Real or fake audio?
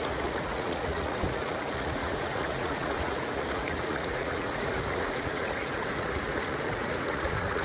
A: fake